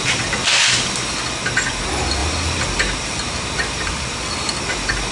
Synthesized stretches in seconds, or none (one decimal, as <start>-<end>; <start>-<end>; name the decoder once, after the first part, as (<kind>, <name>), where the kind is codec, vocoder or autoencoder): none